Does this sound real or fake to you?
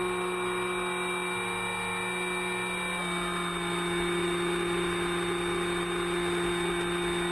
real